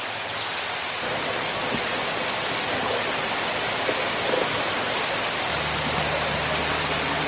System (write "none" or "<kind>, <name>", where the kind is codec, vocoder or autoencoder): vocoder, BigVGAN v2